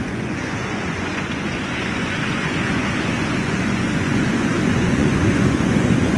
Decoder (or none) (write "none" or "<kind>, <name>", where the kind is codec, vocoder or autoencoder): vocoder, Vocos